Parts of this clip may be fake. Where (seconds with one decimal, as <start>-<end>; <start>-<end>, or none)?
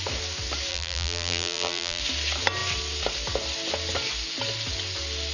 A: 0.7-2.0